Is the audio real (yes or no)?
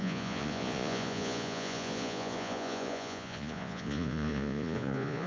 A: no